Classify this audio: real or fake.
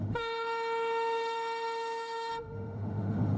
fake